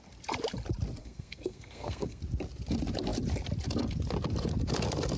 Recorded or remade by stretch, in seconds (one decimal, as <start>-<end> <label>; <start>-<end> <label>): 0.0-1.0 recorded; 1.0-2.2 remade; 2.2-5.2 recorded